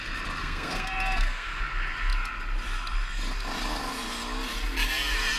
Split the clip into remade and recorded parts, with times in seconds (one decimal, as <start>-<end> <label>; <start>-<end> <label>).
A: 0.0-0.4 recorded; 0.4-1.6 remade; 1.6-5.4 recorded